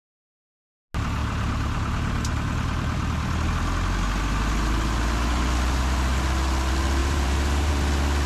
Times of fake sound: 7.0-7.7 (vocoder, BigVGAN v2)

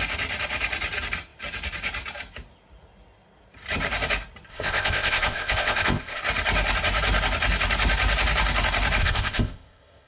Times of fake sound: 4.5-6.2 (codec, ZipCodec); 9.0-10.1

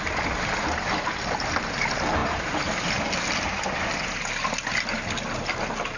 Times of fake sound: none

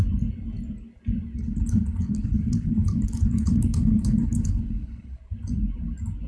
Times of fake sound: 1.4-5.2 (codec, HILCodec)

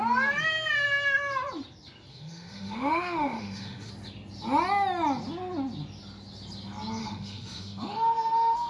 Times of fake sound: 2.1-3.9 (autoencoder, DAC-VAE); 7.0-8.7

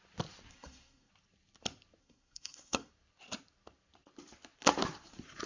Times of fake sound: 0.5-1.1 (codec, SNAC); 2.0-2.9

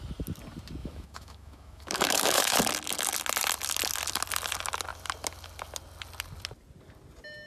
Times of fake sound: 0.8-2.6 (autoencoder, DAC-VAE)

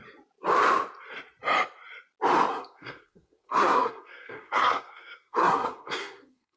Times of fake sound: 2.5-6.6 (codec, SNAC)